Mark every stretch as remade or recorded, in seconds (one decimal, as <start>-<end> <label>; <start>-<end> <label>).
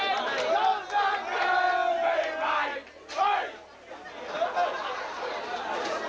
0.0-6.1 recorded